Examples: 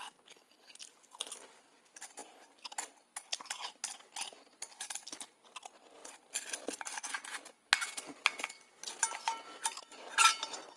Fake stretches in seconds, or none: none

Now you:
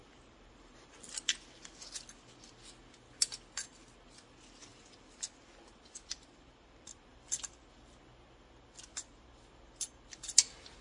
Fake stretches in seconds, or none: 0.0-0.9; 4.7-7.3; 8.9-9.4

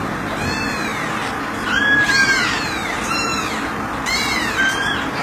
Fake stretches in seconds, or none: 0.0-0.9; 1.8-3.3; 3.8-5.2

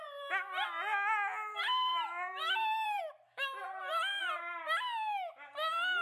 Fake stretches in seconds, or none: 1.9-3.0; 3.6-4.2